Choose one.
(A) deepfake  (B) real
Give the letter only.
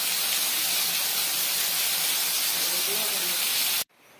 B